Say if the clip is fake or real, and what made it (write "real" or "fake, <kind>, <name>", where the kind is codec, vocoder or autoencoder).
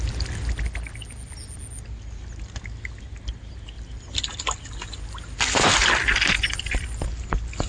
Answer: real